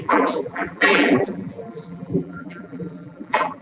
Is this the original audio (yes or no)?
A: no